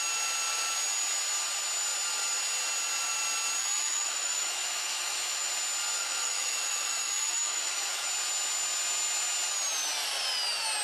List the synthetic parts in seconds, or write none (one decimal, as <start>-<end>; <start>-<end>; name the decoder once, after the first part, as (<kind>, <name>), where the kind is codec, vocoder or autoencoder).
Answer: 3.6-5.5 (autoencoder, DAC-VAE); 6.0-8.1